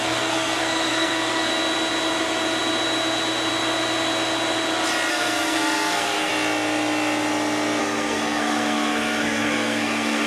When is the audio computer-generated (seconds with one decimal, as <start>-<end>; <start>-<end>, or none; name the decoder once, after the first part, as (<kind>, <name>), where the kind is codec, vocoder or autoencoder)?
0.0-1.5 (codec, SNAC); 5.1-6.3; 7.8-10.3